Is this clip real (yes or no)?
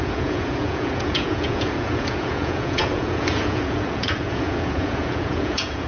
no